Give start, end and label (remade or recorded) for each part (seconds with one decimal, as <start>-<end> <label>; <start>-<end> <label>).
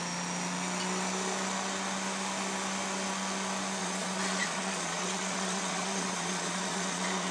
0.0-3.8 recorded; 3.8-7.3 remade